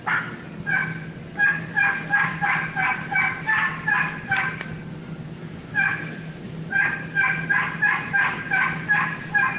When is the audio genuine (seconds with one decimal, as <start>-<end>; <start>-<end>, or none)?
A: 0.0-5.4; 6.7-9.6